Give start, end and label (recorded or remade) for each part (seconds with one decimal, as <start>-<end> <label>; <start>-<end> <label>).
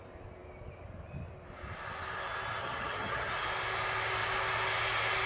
0.0-2.6 recorded; 2.6-3.3 remade; 3.3-5.3 recorded